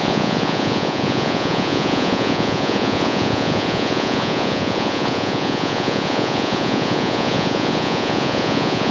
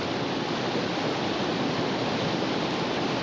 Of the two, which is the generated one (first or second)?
first